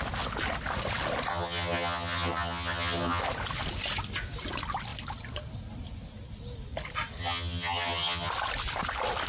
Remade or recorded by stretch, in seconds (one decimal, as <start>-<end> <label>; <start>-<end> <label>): 0.0-1.3 recorded; 1.3-3.2 remade; 3.2-7.2 recorded; 7.2-8.3 remade; 8.3-9.3 recorded